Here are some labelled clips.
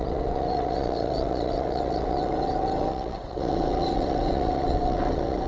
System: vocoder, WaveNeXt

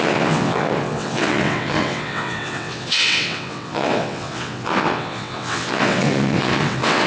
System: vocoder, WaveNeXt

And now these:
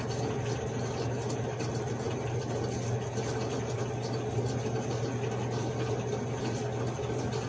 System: none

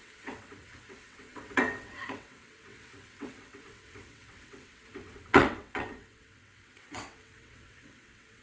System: vocoder, WaveNeXt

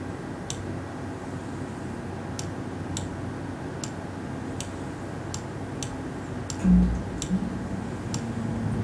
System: none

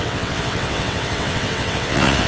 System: vocoder, WaveNeXt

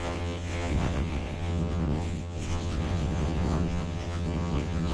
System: vocoder, WaveNeXt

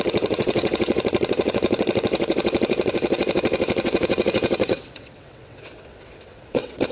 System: vocoder, WaveNeXt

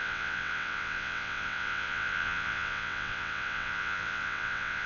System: vocoder, WaveNeXt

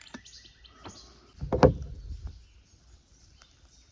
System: none